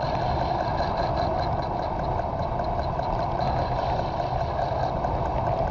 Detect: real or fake real